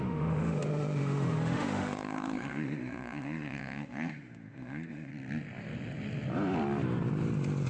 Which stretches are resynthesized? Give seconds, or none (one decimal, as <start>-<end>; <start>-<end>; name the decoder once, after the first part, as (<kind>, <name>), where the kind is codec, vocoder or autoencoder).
0.0-5.1 (autoencoder, DAC-VAE)

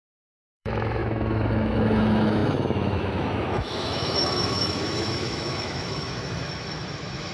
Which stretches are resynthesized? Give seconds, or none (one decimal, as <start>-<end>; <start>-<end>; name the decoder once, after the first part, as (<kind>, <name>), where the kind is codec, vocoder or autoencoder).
0.0-7.3 (autoencoder, DAC-VAE)

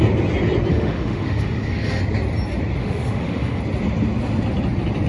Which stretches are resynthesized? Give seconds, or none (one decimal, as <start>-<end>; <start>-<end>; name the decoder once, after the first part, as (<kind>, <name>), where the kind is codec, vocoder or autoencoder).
0.7-2.0 (autoencoder, DAC-VAE); 2.8-3.6

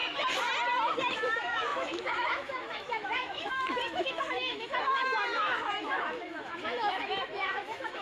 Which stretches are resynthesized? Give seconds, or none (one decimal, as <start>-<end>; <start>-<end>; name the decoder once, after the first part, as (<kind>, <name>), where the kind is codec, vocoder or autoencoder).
1.1-8.0 (autoencoder, DAC-VAE)

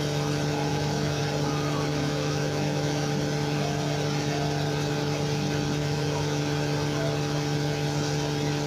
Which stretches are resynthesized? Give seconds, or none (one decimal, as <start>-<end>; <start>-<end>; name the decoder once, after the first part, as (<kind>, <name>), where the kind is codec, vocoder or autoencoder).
0.7-1.2 (autoencoder, DAC-VAE); 1.9-3.1; 5.8-6.4

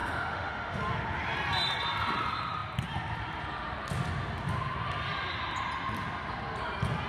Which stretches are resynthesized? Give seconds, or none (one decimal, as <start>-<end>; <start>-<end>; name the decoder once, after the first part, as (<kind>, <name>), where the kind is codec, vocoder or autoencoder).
0.0-0.8 (autoencoder, DAC-VAE)

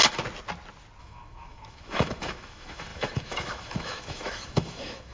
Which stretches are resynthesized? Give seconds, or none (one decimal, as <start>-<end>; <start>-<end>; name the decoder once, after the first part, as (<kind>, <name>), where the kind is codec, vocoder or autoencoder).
1.0-5.1 (autoencoder, DAC-VAE)

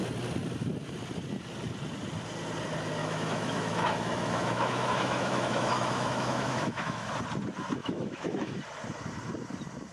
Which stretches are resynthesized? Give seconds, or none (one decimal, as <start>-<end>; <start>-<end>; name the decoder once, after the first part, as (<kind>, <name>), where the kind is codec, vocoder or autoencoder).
3.0-7.1 (autoencoder, DAC-VAE); 7.8-8.6